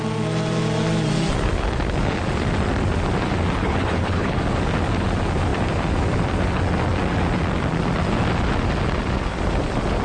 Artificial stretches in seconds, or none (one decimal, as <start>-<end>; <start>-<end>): 3.6-4.4